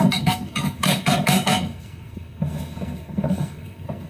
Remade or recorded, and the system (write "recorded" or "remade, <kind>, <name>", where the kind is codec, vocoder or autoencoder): remade, codec, SNAC